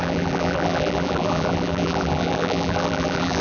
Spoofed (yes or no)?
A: yes